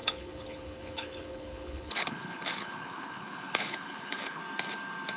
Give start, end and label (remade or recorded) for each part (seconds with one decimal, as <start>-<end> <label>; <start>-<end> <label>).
0.0-4.4 remade; 4.4-5.2 recorded